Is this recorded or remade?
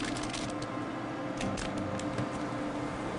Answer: recorded